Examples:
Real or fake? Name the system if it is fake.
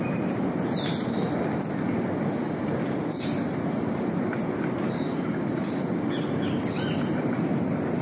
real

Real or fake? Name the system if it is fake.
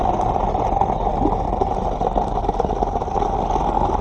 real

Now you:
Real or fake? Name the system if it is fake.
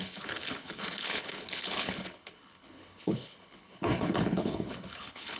fake, codec, HILCodec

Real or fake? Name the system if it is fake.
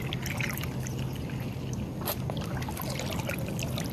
real